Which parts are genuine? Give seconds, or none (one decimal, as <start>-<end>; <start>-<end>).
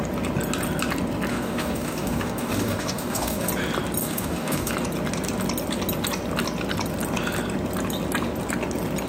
0.0-1.3; 3.5-4.0; 4.7-9.1